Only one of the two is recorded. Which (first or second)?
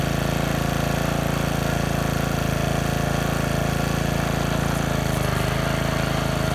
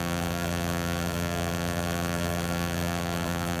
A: first